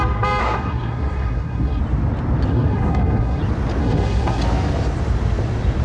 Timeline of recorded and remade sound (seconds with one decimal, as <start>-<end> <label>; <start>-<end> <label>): 0.0-0.4 recorded; 0.4-1.8 remade; 1.8-2.5 recorded; 2.5-3.4 remade; 3.4-3.8 recorded; 3.8-4.4 remade; 4.4-5.8 recorded